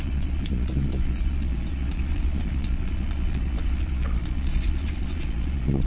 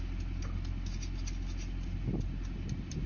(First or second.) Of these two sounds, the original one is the second